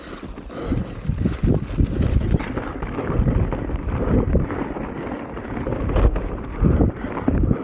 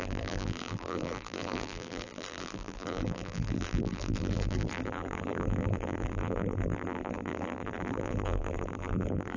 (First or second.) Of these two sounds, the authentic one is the first